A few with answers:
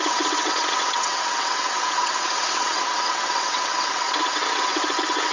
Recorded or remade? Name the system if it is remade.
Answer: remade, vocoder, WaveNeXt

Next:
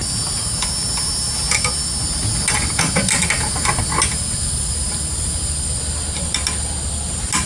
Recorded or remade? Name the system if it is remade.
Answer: recorded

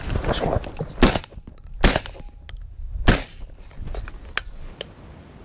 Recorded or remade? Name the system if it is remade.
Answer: recorded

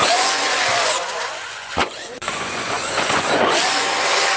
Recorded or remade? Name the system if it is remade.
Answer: remade, vocoder, Vocos